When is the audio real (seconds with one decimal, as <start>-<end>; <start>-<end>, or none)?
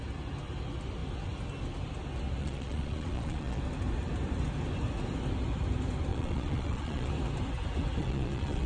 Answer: 0.0-2.4; 3.6-6.1; 7.1-8.0